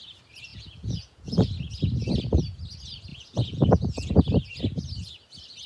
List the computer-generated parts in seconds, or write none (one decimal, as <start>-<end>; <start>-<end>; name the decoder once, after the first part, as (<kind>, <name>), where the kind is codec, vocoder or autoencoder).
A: 0.5-1.5 (vocoder, Vocos); 3.1-4.1